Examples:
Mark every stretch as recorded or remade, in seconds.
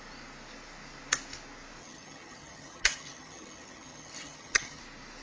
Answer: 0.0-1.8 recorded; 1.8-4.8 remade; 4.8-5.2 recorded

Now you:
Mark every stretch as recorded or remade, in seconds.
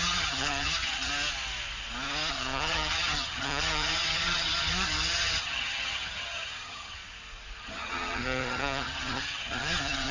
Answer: 0.0-1.1 remade; 1.1-2.3 recorded; 2.3-7.0 remade; 7.0-7.6 recorded; 7.6-10.1 remade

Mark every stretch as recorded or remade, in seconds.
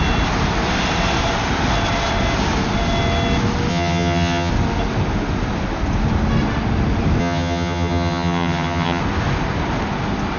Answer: 0.0-3.7 recorded; 3.7-4.5 remade; 4.5-7.2 recorded; 7.2-9.0 remade; 9.0-10.4 recorded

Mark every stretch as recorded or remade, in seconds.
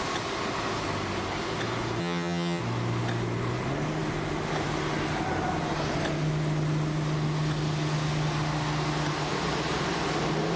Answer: 0.0-2.0 recorded; 2.0-2.6 remade; 2.6-10.6 recorded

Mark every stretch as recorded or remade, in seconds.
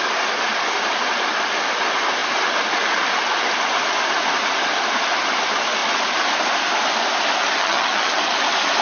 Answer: 0.0-7.6 recorded; 7.6-8.2 remade; 8.2-8.8 recorded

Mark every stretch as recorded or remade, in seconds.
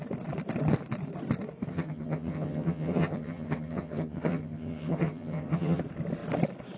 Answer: 0.0-1.7 recorded; 1.7-5.8 remade; 5.8-6.8 recorded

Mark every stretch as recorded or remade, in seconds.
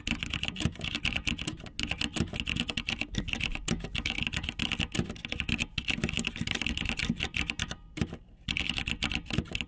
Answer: 0.0-9.7 recorded